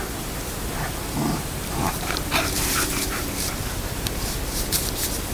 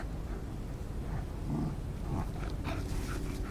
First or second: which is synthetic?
first